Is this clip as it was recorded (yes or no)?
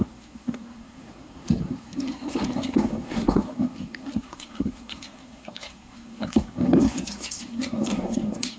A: no